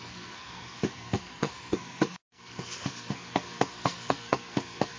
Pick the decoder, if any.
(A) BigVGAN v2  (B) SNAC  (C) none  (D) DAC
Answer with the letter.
B